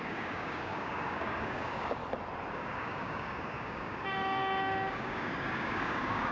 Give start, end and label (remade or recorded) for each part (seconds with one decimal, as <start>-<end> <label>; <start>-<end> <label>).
0.0-2.0 remade; 2.0-2.5 recorded; 2.5-6.3 remade